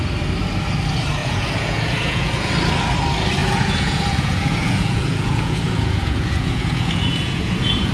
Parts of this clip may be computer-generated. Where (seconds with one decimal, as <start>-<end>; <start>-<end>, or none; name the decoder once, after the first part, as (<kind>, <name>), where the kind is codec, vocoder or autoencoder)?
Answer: 1.2-2.5 (vocoder, Vocos); 3.4-7.9